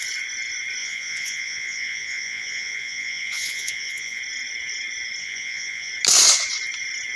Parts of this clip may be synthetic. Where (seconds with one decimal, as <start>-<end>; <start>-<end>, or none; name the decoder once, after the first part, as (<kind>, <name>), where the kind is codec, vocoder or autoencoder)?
0.8-4.2 (vocoder, Vocos); 5.2-5.9